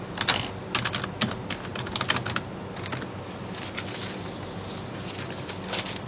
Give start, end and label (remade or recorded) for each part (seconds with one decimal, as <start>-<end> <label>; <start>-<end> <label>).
0.0-6.1 recorded